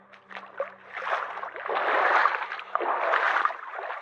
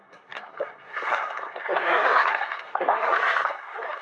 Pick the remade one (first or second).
second